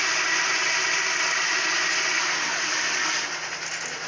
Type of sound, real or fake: real